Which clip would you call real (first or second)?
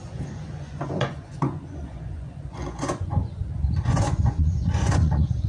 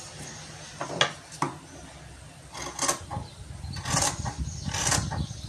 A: second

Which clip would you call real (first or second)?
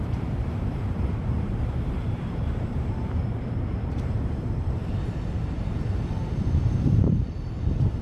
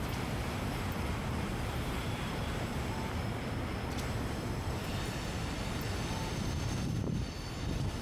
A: second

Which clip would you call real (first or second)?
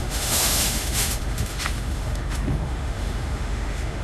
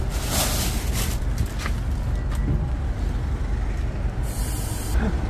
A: second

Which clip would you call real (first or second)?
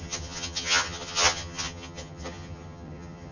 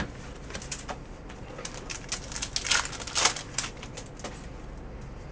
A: second